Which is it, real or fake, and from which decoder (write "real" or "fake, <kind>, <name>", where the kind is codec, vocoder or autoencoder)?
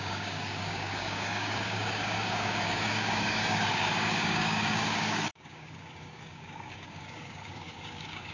fake, codec, DAC